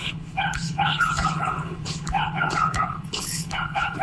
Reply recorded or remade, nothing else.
remade